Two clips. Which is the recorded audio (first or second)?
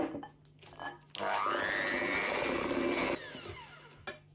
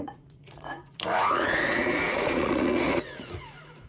first